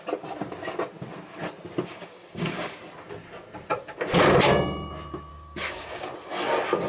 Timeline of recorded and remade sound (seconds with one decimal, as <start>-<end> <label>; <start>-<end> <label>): 0.0-2.0 recorded; 2.0-2.8 remade; 2.8-5.3 recorded; 5.3-6.1 remade; 6.1-6.9 recorded